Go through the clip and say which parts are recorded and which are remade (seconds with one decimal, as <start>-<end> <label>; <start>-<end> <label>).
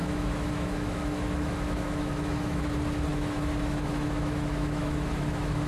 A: 0.0-2.6 remade; 2.6-3.1 recorded; 3.1-5.7 remade